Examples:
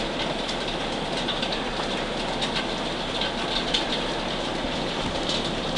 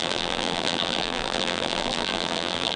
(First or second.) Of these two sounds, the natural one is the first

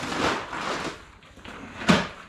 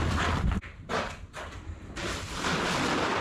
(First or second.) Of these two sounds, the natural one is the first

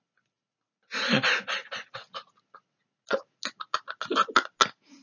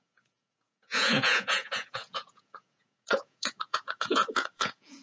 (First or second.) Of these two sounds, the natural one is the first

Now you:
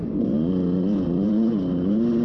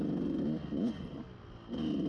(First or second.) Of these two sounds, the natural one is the second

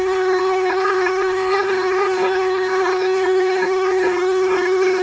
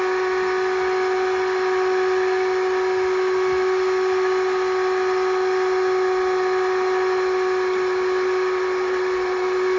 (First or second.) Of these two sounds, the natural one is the second